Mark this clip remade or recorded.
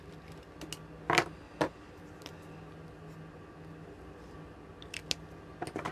recorded